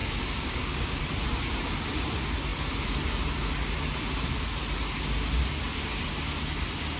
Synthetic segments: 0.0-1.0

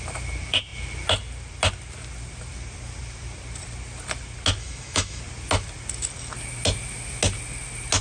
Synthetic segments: 4.6-5.2

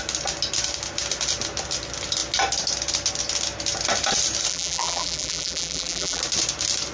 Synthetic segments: 4.5-6.2

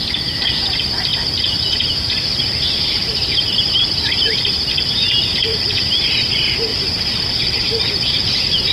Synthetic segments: 1.1-3.4; 5.5-6.0; 6.7-7.3

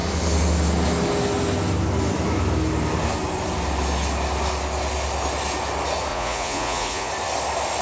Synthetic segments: 6.1-7.1

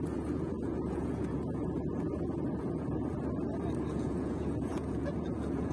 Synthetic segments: 0.0-3.1; 3.9-5.7

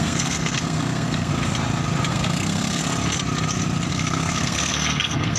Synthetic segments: 0.0-1.3; 2.1-2.8; 3.9-5.4